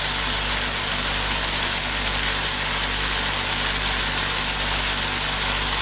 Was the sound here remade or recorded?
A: recorded